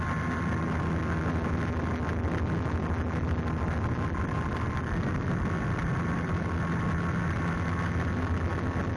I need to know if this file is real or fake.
real